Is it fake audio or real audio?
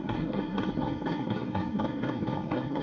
fake